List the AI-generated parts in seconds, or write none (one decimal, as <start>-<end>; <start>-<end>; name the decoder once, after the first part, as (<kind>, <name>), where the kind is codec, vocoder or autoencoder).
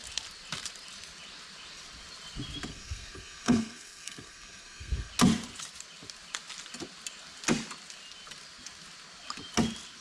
2.7-5.1 (codec, SNAC)